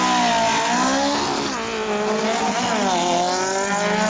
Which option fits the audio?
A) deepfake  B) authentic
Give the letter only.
B